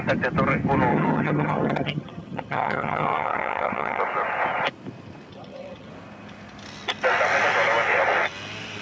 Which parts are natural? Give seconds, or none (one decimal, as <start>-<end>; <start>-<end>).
0.0-0.9; 4.0-5.3; 5.9-8.8